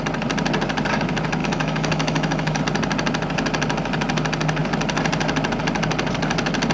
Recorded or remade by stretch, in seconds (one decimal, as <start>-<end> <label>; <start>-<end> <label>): 0.0-1.4 recorded; 1.4-2.6 remade; 2.6-6.7 recorded

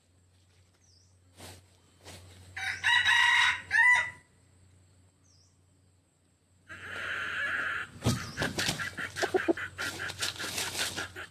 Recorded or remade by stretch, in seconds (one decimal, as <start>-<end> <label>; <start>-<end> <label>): 0.0-11.3 recorded

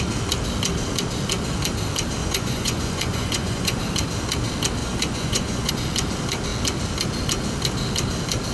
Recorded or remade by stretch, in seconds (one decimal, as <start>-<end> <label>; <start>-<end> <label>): 0.0-2.2 recorded; 2.2-3.8 remade; 3.8-4.8 recorded; 4.8-5.7 remade; 5.7-8.5 recorded

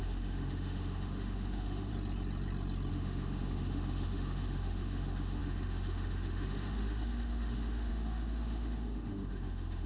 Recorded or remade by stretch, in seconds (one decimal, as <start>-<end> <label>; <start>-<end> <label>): 0.0-1.9 remade; 1.9-2.9 recorded; 2.9-9.9 remade

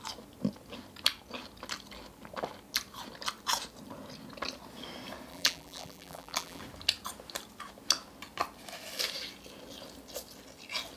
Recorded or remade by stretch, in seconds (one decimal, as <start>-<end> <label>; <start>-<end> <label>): 0.0-5.3 recorded; 5.3-6.6 remade; 6.6-11.0 recorded

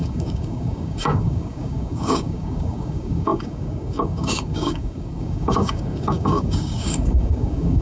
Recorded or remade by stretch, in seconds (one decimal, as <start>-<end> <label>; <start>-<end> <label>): 0.0-7.8 remade

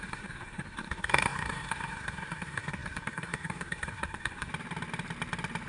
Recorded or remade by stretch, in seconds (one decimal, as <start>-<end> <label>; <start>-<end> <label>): 0.0-4.5 remade; 4.5-5.7 recorded

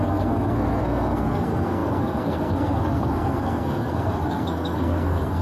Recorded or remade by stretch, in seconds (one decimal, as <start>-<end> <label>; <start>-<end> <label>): 0.0-5.4 remade